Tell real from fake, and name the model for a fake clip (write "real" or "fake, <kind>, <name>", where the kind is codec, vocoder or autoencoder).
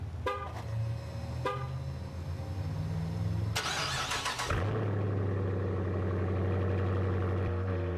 real